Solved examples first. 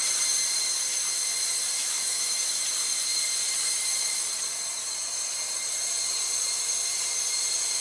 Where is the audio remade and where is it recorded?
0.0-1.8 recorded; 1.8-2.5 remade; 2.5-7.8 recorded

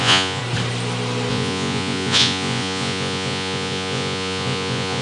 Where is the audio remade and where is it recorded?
0.0-0.4 remade; 0.4-1.3 recorded; 1.3-5.0 remade

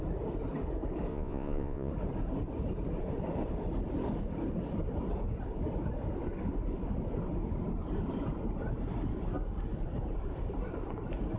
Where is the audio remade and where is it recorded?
0.0-1.1 recorded; 1.1-1.9 remade; 1.9-11.4 recorded

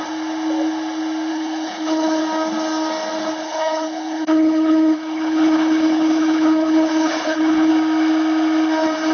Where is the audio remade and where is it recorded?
0.0-1.3 recorded; 1.3-2.2 remade; 2.2-3.4 recorded; 3.4-7.7 remade; 7.7-9.1 recorded